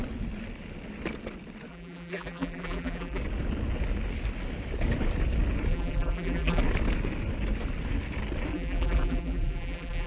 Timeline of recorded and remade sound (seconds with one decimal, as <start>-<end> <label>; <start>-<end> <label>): 0.0-1.7 recorded; 1.7-3.2 remade; 3.2-5.7 recorded; 5.7-6.6 remade; 6.6-8.5 recorded; 8.5-10.1 remade